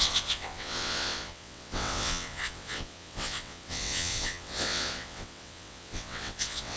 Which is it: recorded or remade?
remade